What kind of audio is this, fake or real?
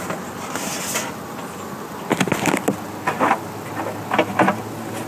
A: real